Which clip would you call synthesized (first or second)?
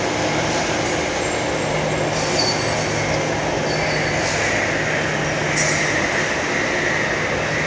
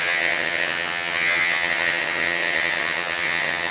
second